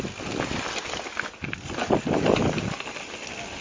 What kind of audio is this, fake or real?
real